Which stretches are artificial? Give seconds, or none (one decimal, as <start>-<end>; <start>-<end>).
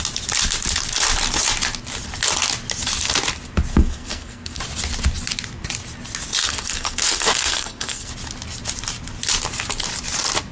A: 3.7-4.6; 6.4-8.1